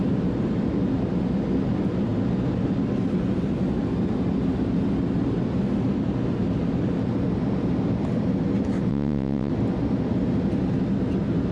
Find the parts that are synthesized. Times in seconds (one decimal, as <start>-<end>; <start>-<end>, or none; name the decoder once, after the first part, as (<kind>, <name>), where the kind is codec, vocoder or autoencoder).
8.9-9.5 (vocoder, WaveNeXt)